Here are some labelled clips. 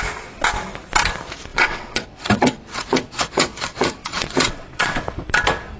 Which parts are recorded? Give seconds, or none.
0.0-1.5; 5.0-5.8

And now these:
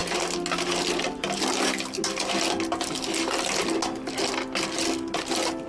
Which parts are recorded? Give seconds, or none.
0.0-5.7

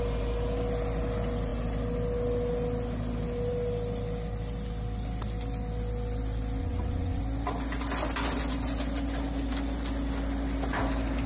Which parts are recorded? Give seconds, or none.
0.0-6.6; 7.2-11.3